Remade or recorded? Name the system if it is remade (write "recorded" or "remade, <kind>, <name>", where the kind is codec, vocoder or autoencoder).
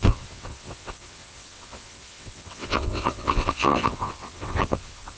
remade, vocoder, WaveNeXt